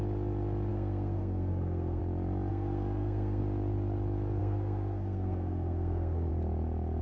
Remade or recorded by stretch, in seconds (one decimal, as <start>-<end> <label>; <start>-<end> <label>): 0.0-0.7 recorded; 0.7-2.0 remade; 2.0-2.5 recorded; 2.5-3.4 remade; 3.4-4.4 recorded; 4.4-6.3 remade; 6.3-7.0 recorded